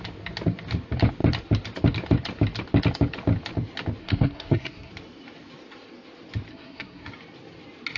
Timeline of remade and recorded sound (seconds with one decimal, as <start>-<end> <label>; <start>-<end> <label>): 0.0-4.0 recorded; 4.0-4.9 remade; 4.9-6.5 recorded; 6.5-7.1 remade; 7.1-8.0 recorded